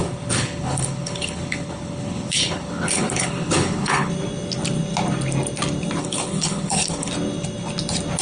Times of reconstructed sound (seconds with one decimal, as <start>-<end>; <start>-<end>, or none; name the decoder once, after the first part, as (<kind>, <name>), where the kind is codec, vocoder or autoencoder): 0.0-4.1 (codec, HILCodec); 6.0-7.1